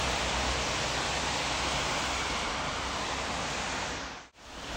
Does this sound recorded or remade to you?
recorded